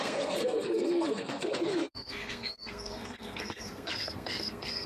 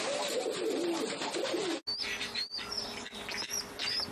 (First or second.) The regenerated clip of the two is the first